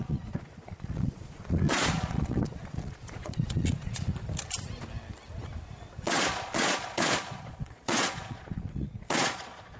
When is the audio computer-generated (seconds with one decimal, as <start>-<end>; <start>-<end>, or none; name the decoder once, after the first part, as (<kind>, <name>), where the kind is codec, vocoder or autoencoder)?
0.0-4.1 (vocoder, Vocos); 6.0-9.8